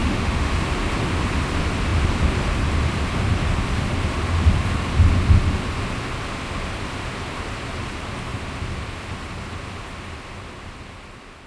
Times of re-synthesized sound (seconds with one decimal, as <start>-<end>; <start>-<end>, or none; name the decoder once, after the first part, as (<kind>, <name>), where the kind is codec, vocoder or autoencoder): 0.0-0.5 (autoencoder, DAC-VAE)